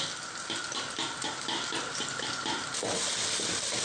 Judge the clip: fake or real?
real